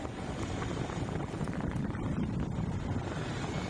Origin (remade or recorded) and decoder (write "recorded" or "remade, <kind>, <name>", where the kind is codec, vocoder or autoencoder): recorded